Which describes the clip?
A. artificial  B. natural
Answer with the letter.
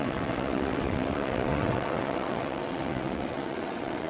A